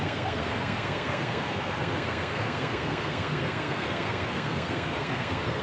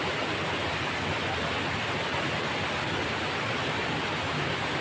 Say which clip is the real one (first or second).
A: second